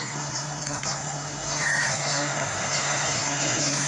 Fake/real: fake